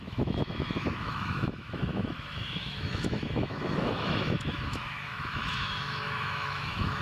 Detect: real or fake fake